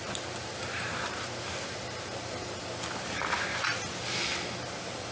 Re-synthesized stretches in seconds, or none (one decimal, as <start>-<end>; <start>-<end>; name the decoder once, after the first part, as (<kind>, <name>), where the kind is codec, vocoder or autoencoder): 0.0-2.4 (vocoder, BigVGAN v2); 3.0-5.1